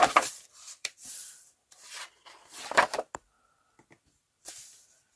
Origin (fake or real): fake